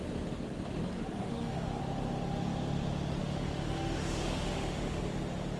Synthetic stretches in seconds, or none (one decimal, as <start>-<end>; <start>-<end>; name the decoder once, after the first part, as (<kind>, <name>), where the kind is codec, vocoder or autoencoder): 1.2-1.8 (autoencoder, DAC-VAE); 3.2-5.0